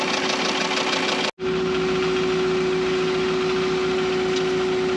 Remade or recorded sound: recorded